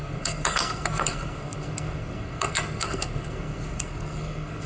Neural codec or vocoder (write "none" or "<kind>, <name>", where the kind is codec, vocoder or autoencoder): codec, SNAC